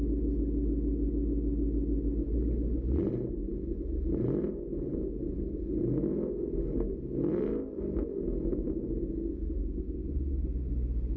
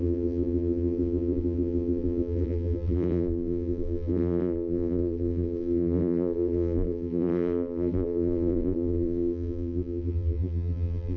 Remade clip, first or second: second